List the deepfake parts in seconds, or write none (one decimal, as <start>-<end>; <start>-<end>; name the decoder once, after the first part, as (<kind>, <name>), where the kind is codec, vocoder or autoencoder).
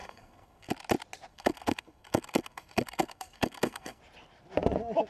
0.0-0.7 (codec, SNAC); 1.3-4.0